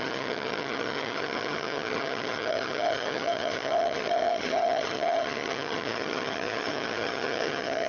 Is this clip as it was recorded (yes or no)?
no